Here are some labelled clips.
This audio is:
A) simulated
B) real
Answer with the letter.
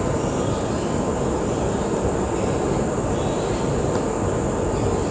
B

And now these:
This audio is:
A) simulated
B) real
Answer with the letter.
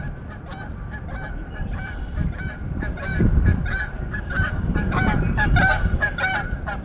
A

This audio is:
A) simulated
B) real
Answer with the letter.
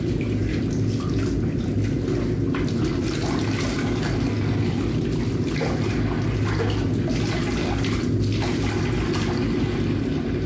B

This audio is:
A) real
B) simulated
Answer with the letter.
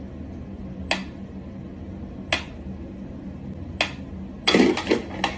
A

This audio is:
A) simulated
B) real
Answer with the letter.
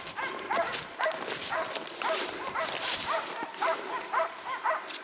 A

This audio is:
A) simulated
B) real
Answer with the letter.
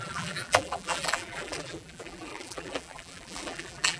A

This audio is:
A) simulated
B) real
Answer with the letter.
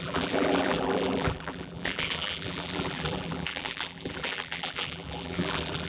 A